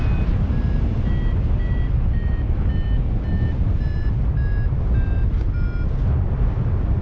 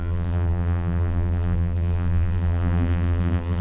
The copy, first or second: second